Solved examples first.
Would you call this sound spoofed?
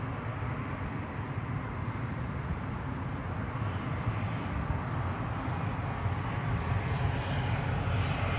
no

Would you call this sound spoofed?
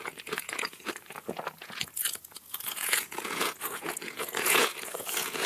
yes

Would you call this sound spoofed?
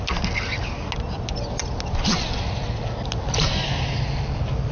no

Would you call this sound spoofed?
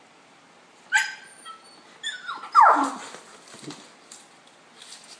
no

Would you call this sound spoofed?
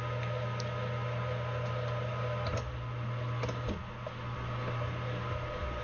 no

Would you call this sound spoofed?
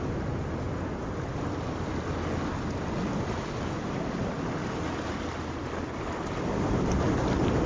no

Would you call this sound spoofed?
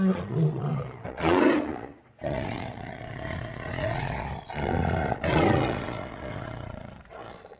yes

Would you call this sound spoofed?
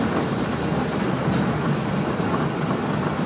no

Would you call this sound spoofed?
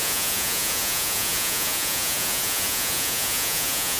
yes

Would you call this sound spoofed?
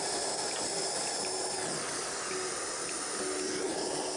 no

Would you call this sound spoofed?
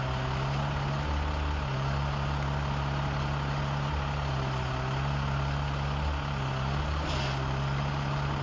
no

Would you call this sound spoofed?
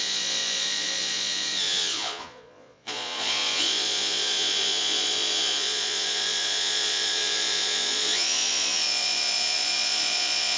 yes